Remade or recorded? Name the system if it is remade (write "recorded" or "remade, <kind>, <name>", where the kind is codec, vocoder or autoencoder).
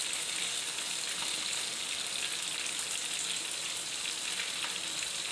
recorded